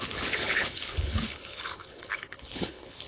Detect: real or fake fake